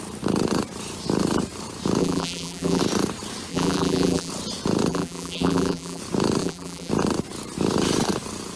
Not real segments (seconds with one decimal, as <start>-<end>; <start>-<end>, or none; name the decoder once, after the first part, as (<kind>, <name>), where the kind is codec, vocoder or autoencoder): 2.0-2.8 (vocoder, BigVGAN v2); 3.5-4.3; 4.9-6.0; 6.4-6.9